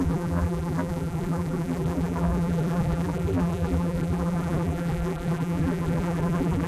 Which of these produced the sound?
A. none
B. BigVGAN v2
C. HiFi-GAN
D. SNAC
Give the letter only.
B